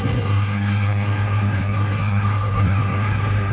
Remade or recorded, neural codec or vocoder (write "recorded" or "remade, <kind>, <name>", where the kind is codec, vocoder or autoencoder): remade, codec, SNAC